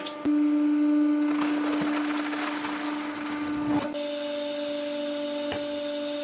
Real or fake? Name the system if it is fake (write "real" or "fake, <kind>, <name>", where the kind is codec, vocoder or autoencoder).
real